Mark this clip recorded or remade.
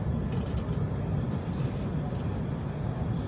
remade